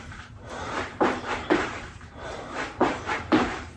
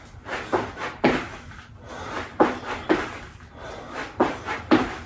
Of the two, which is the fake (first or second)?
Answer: first